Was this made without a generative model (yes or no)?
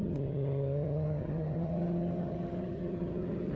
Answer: no